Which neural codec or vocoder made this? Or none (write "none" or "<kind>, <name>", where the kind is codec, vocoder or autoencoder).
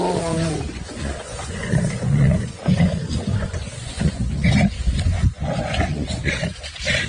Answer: vocoder, Vocos